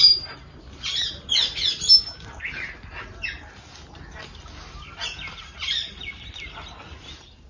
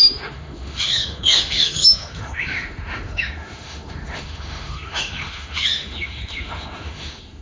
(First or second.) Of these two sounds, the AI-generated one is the second